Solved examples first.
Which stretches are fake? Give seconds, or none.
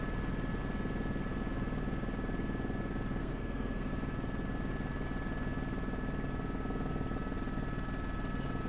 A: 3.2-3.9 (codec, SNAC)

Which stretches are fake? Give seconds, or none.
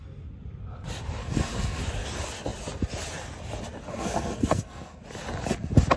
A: 1.2-1.8 (codec, SNAC); 3.9-5.0